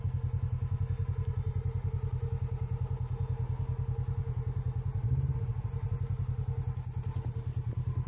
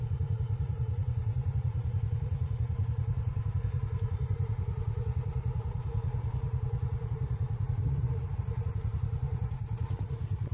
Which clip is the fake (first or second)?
second